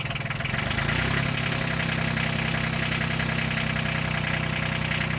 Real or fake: real